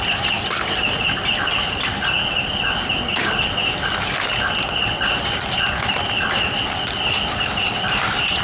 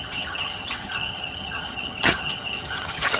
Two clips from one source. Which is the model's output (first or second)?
second